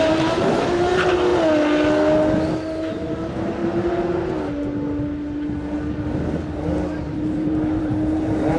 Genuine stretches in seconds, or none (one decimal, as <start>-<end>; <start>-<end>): 1.3-2.9; 3.6-7.0